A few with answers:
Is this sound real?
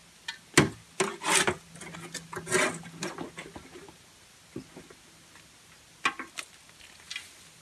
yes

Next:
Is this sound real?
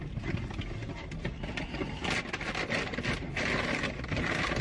yes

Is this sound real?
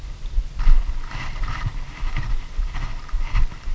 yes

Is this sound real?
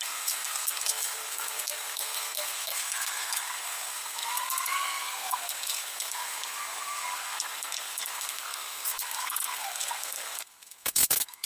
no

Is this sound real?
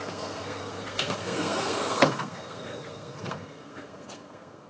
no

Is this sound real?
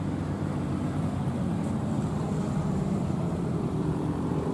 no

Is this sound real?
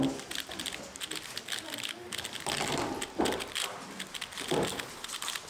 yes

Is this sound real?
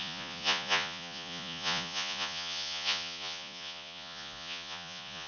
no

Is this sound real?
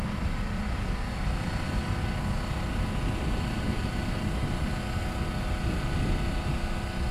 yes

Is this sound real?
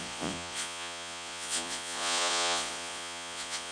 no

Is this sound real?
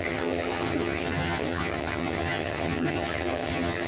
no